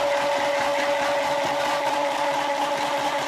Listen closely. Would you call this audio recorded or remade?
recorded